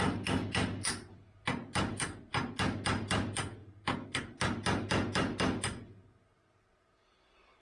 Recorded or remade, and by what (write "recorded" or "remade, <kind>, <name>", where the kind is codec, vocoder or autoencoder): recorded